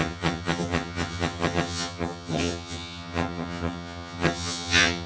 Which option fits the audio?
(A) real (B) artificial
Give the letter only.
B